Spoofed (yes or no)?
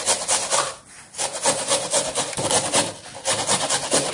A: no